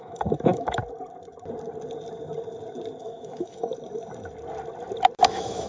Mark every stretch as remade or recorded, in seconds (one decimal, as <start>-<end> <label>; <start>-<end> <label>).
0.0-0.8 remade; 0.8-3.0 recorded; 3.0-3.7 remade; 3.7-5.3 recorded; 5.3-5.7 remade